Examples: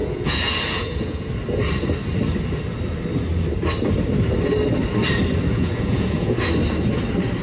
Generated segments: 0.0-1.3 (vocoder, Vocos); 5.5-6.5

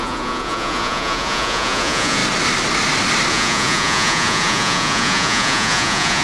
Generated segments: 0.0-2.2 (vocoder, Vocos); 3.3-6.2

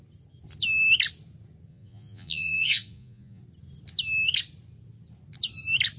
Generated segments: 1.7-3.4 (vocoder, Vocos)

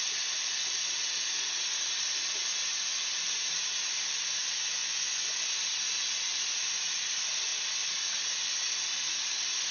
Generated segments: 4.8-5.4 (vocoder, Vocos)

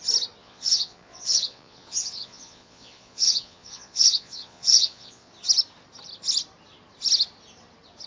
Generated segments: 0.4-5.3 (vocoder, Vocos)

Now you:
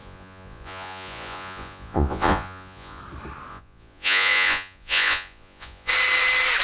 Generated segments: 0.0-3.0 (vocoder, Vocos); 3.5-5.9